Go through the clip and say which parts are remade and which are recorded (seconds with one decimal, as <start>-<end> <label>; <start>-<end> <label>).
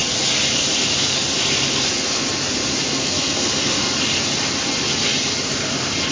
0.0-3.0 recorded; 3.0-3.8 remade; 3.8-6.1 recorded